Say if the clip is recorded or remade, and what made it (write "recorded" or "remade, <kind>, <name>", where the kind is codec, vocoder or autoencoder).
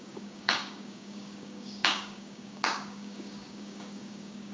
remade, codec, DAC